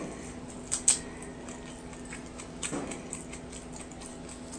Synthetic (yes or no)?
no